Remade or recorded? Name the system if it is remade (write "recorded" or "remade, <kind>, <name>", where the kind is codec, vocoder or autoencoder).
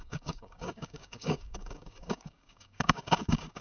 remade, codec, DAC